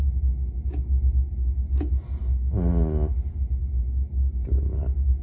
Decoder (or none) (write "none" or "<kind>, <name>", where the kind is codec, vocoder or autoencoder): none